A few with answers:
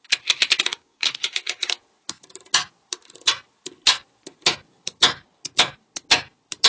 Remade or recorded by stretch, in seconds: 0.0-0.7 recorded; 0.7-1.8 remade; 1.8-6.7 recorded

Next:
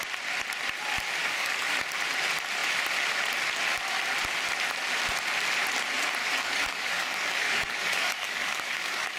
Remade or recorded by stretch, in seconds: 0.0-1.2 recorded; 1.2-1.7 remade; 1.7-6.2 recorded; 6.2-9.2 remade

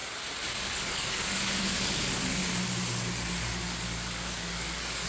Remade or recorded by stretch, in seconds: 0.0-0.6 recorded; 0.6-2.4 remade; 2.4-3.4 recorded; 3.4-5.1 remade